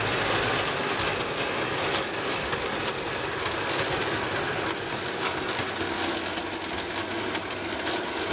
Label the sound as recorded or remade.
recorded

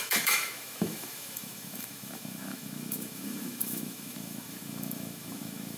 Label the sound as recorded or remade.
remade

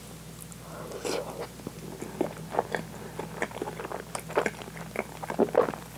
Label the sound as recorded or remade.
recorded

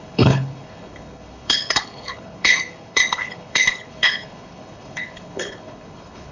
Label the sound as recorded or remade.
remade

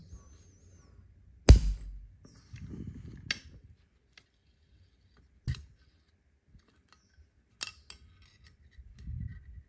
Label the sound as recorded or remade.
recorded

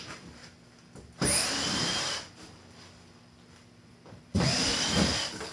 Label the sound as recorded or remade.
recorded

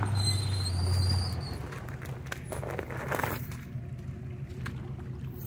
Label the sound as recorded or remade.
recorded